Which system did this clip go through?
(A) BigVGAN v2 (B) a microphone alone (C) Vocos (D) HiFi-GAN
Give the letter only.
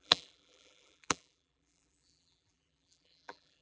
A